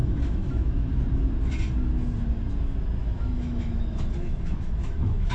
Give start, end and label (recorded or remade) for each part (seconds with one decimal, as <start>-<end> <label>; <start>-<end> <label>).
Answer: 0.0-0.9 remade; 0.9-3.0 recorded; 3.0-5.3 remade